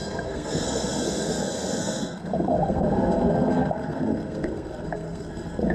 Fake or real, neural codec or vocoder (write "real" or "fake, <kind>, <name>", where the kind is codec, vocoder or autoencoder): fake, codec, SNAC